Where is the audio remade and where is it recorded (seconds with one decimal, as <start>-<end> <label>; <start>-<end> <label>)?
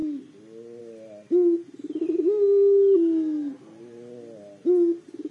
0.0-5.3 recorded